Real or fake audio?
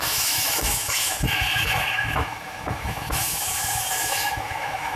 fake